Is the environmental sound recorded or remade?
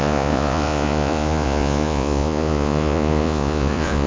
remade